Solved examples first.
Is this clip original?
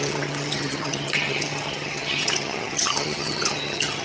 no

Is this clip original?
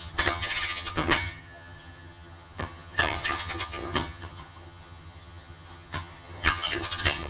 no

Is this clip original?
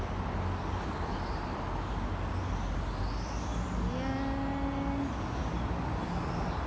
yes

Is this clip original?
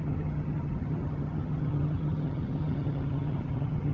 no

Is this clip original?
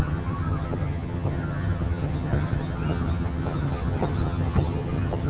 no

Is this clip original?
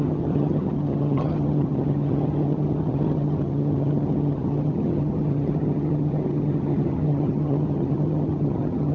no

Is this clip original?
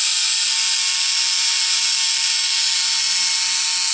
yes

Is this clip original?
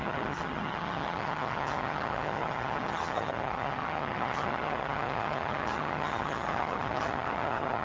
no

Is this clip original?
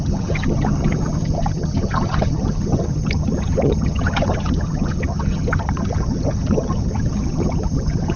no